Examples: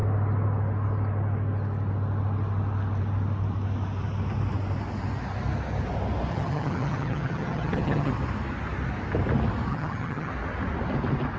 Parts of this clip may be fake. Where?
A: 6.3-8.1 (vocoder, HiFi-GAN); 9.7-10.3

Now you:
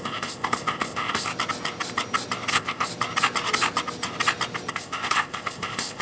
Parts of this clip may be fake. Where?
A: 0.0-1.3 (codec, ZipCodec); 2.5-2.9; 4.7-6.0

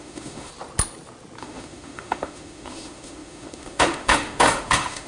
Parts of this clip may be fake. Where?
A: 0.0-0.5 (autoencoder, DAC-VAE); 1.4-5.1

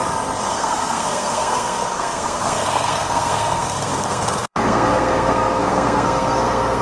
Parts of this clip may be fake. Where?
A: 0.5-6.8 (codec, SNAC)

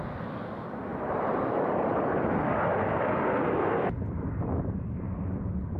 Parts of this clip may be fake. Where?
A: none

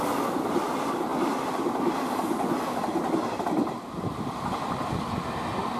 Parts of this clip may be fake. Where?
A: none

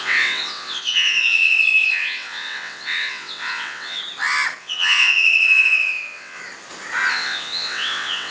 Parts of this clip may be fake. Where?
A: 0.0-4.0 (vocoder, WaveNeXt); 4.6-6.4; 7.1-8.3

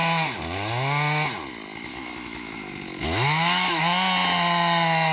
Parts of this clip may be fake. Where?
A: 1.9-3.8 (autoencoder, DAC-VAE)